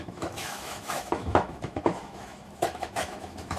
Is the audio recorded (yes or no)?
no